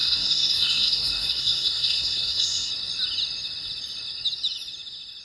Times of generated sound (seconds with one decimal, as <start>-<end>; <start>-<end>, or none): 0.0-2.7